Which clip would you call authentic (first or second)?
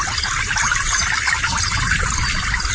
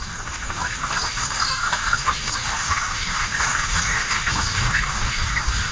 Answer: first